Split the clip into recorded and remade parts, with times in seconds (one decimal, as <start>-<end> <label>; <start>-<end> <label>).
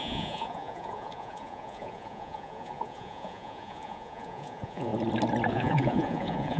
0.0-4.9 remade; 4.9-5.5 recorded; 5.5-6.6 remade